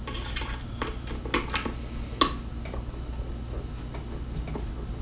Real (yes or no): yes